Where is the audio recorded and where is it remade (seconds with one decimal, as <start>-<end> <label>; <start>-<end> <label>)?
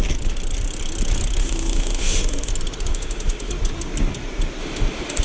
0.0-1.4 recorded; 1.4-2.5 remade; 2.5-2.9 recorded; 2.9-3.5 remade; 3.5-4.6 recorded; 4.6-5.2 remade